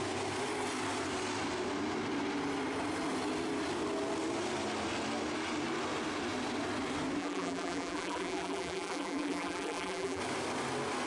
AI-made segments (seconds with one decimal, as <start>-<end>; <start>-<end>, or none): 7.2-10.2